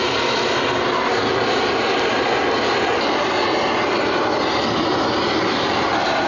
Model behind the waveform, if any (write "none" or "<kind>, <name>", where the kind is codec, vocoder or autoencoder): none